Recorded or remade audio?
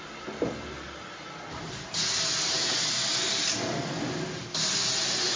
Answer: recorded